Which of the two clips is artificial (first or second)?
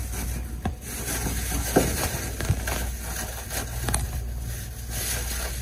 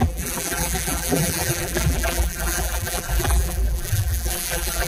second